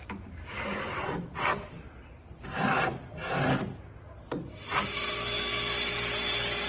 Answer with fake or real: real